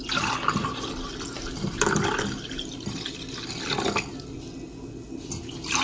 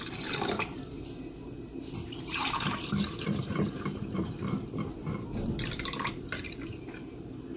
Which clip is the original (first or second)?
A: first